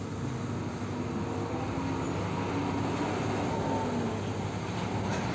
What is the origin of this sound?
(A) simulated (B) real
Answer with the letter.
B